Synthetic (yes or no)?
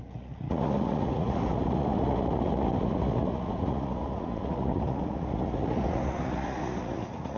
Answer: yes